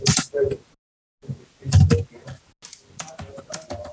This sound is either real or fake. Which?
real